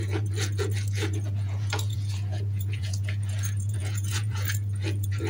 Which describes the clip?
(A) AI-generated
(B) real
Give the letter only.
A